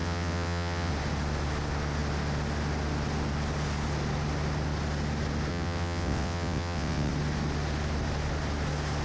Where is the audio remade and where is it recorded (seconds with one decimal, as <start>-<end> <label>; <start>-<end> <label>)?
0.0-0.9 remade; 0.9-5.5 recorded; 5.5-7.1 remade; 7.1-9.0 recorded